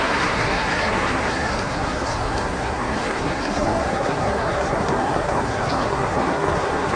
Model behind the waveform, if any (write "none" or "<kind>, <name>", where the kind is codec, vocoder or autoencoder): codec, SNAC